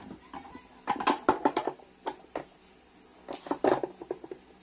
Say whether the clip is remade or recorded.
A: recorded